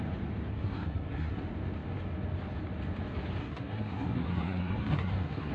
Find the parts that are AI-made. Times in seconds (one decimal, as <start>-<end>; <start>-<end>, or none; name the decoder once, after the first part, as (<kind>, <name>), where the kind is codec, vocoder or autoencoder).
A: 0.5-1.4 (codec, SNAC); 3.4-5.5